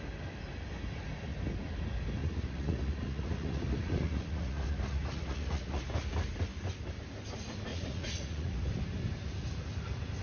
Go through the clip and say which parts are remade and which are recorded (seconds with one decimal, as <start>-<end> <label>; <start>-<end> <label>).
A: 0.0-2.2 recorded; 2.2-5.8 remade; 5.8-7.7 recorded; 7.7-8.7 remade; 8.7-10.2 recorded